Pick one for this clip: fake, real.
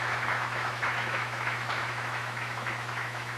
fake